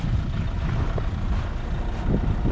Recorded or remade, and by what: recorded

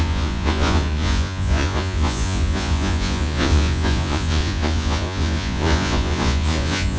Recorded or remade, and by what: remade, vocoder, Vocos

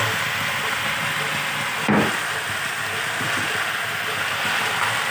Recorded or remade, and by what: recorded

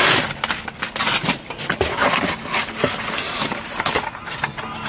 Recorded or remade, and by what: recorded